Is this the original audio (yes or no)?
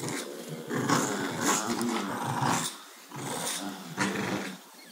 yes